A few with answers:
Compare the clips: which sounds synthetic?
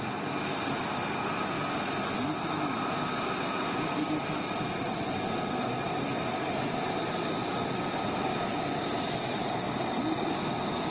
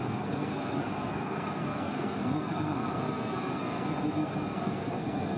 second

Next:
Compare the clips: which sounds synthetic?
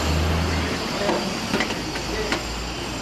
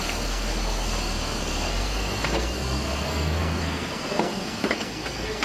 second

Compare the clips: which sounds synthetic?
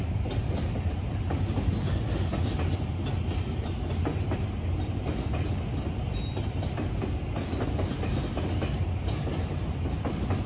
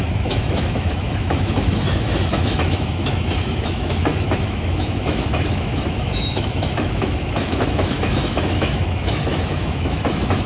second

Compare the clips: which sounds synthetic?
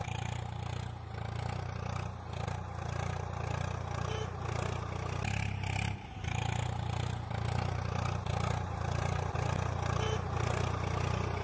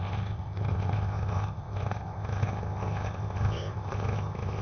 second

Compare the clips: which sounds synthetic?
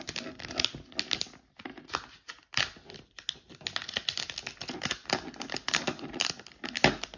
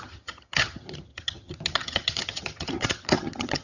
second